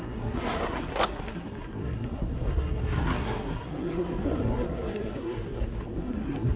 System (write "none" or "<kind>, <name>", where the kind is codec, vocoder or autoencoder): codec, SNAC